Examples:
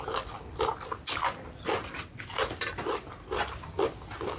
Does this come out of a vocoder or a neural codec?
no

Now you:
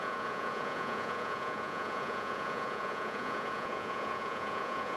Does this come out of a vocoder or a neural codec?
yes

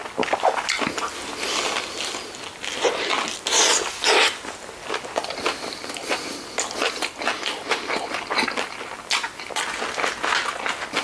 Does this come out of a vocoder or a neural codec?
no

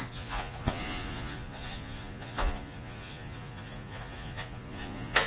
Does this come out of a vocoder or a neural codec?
yes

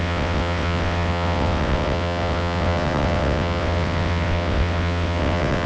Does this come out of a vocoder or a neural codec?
yes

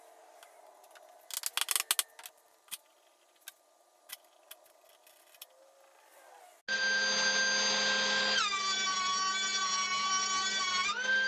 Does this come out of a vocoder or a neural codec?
no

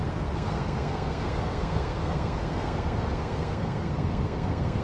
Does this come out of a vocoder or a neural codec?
yes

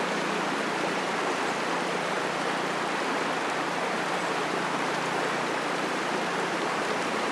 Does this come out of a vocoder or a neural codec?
yes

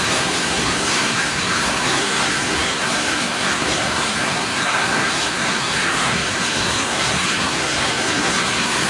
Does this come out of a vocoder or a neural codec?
yes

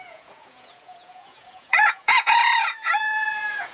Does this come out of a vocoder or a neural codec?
yes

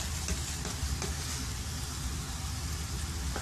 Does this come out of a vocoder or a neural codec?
no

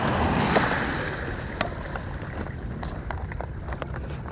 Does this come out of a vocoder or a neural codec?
no